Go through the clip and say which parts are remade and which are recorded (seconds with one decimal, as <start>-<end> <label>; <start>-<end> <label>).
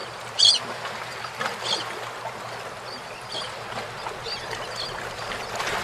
0.0-5.8 recorded